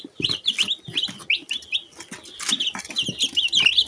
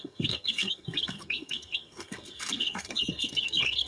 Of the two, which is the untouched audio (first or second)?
first